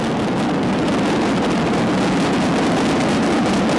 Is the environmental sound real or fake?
real